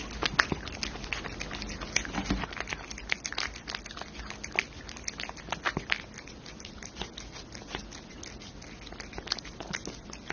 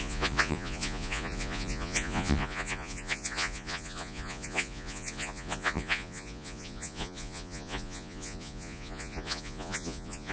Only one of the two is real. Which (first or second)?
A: first